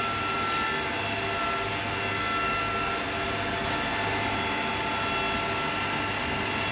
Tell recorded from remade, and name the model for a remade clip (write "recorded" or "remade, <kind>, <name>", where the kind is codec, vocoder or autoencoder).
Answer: recorded